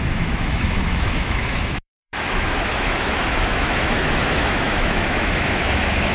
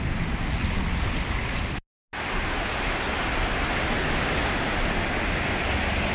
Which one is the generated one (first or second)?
first